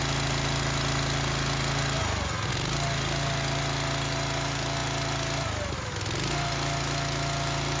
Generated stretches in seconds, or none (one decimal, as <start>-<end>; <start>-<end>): none